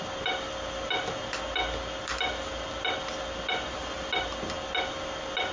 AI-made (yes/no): no